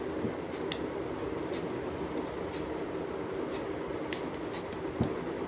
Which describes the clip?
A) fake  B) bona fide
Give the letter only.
B